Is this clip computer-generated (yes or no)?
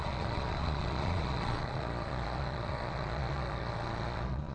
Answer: yes